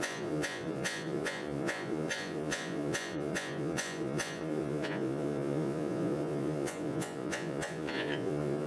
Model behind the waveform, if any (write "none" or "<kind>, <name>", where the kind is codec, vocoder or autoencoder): vocoder, Vocos